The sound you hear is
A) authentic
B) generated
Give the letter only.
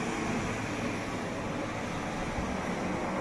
A